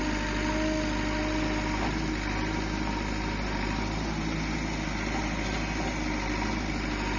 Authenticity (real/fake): real